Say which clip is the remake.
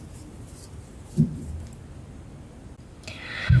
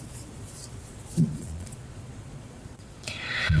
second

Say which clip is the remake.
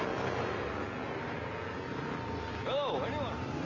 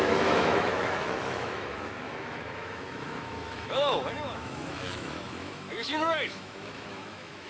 second